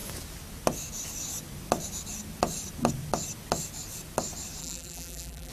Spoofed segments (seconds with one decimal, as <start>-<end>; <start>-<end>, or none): 4.6-5.5